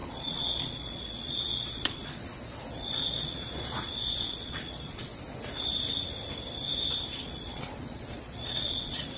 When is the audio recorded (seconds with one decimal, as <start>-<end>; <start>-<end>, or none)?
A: 2.3-3.0; 5.1-7.2